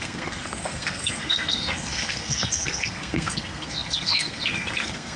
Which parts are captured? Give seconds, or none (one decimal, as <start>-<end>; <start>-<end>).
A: none